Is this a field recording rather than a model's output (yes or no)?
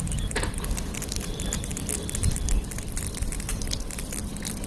no